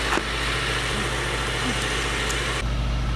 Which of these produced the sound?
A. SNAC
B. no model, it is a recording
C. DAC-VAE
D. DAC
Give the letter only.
B